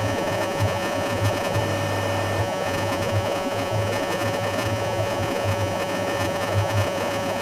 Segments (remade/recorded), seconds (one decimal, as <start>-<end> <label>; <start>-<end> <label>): 0.0-1.6 remade; 1.6-2.4 recorded; 2.4-7.4 remade